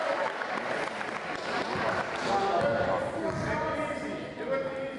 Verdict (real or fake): real